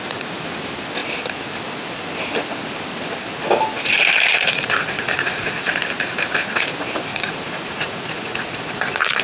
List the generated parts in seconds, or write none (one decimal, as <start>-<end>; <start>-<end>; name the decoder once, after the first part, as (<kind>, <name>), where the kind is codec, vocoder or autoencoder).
4.3-5.7 (vocoder, Vocos); 7.1-9.2